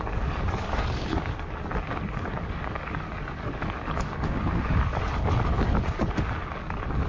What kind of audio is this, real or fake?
fake